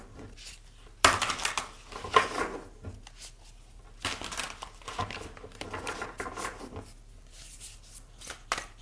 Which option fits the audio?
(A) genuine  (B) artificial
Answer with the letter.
A